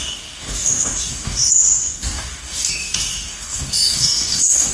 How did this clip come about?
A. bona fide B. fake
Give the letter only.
B